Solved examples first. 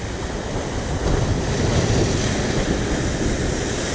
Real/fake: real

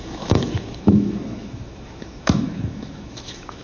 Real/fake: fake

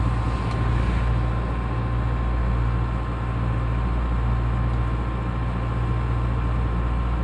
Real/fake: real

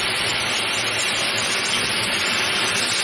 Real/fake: real